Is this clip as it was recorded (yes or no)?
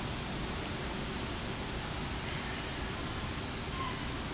yes